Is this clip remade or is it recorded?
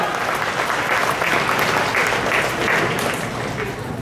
recorded